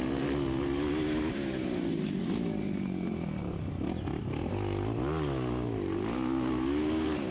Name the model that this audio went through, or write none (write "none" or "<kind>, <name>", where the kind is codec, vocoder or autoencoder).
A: none